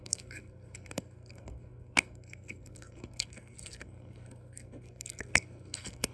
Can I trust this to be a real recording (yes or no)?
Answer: no